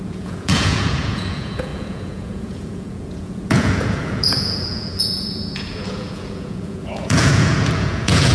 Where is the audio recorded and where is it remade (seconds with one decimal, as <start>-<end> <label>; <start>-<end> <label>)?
0.0-8.3 remade